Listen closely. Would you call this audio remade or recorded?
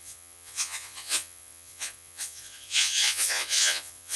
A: remade